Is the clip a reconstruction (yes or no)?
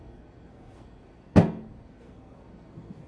yes